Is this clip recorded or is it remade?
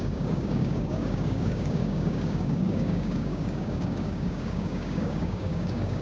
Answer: remade